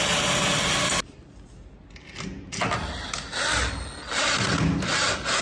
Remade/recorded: recorded